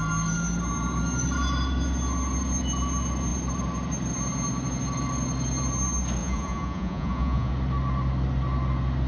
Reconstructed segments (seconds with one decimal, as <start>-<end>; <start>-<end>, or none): 6.2-7.5